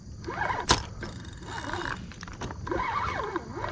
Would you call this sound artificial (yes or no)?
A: no